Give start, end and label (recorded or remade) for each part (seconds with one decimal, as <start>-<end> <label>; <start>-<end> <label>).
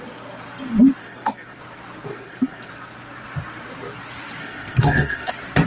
0.0-1.0 recorded; 1.0-1.6 remade; 1.6-2.1 recorded; 2.1-2.7 remade; 2.7-4.4 recorded; 4.4-5.3 remade; 5.3-5.7 recorded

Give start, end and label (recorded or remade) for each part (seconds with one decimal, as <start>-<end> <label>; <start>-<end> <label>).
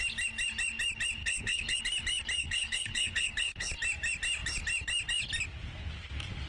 0.0-1.2 recorded; 1.2-1.8 remade; 1.8-2.4 recorded; 2.4-3.7 remade; 3.7-6.5 recorded